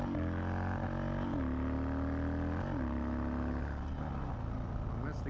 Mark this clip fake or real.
real